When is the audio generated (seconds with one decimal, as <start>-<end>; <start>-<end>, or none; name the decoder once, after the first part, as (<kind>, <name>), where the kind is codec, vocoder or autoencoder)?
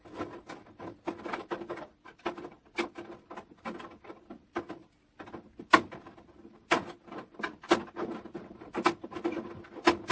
none